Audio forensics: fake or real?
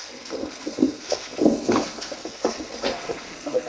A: fake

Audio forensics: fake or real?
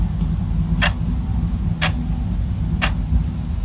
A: real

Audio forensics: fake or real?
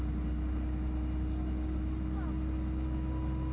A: real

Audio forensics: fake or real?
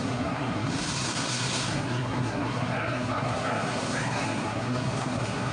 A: fake